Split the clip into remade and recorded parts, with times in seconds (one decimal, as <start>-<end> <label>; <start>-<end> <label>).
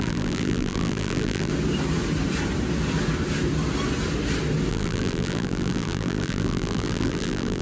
0.0-1.5 remade; 1.5-4.7 recorded; 4.7-7.6 remade